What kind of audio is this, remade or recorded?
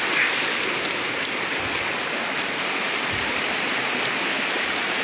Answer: recorded